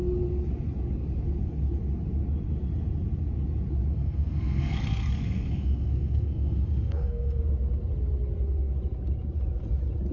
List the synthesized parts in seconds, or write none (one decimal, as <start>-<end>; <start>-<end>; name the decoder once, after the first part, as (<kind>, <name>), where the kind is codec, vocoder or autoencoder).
3.9-7.4 (codec, SNAC)